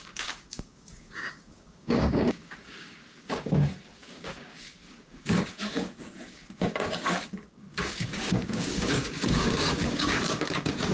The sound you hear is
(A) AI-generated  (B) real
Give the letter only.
A